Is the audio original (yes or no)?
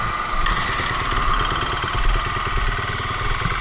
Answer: yes